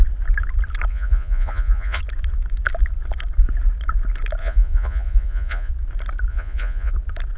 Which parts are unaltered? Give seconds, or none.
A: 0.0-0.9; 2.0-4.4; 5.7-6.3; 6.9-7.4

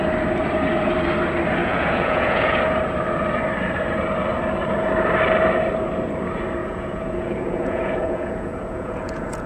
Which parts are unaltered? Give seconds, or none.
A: 0.0-1.6; 2.6-6.6

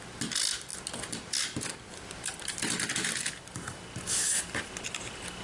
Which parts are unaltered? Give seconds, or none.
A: 0.0-5.4

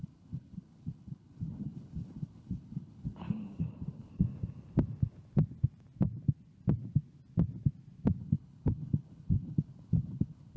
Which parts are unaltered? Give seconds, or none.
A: 4.1-8.2

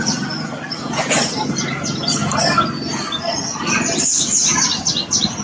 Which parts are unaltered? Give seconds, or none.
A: 0.0-5.4

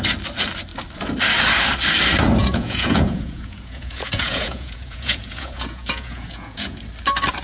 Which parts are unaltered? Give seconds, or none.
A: 0.0-2.4; 6.8-7.4

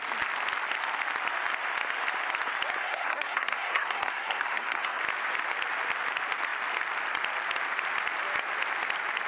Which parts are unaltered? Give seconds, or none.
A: 0.0-2.8; 5.0-9.3

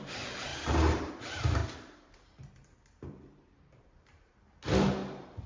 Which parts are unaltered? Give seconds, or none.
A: 4.3-5.1